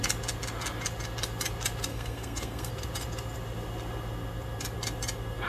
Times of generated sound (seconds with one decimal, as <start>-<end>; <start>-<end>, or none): 1.9-2.7